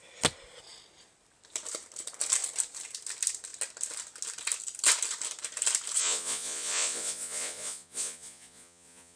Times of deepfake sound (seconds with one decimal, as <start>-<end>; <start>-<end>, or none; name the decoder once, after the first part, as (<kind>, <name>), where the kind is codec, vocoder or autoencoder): 6.0-9.2 (vocoder, Vocos)